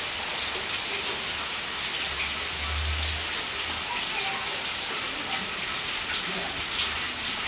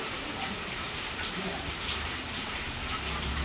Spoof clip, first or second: second